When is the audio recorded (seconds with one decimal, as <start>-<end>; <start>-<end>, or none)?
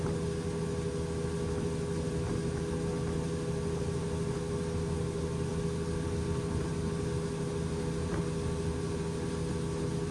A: 0.0-10.1